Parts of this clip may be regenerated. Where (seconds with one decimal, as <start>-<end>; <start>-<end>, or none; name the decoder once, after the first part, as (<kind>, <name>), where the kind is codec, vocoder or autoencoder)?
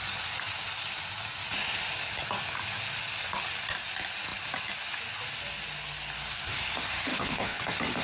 7.1-7.6 (codec, HILCodec)